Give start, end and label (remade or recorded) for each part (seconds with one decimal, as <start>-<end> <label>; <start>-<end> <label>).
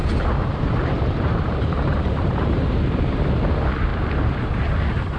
0.0-3.1 remade; 3.1-5.2 recorded